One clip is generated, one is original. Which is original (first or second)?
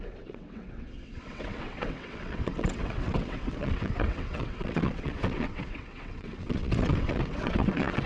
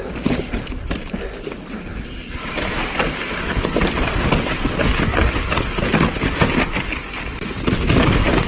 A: second